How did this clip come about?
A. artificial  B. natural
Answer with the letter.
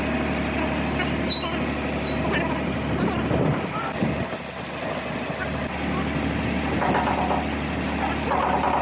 B